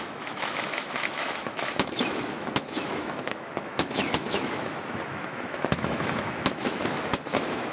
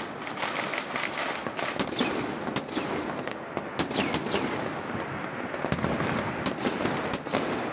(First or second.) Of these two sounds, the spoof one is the first